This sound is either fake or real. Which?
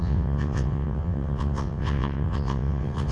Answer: fake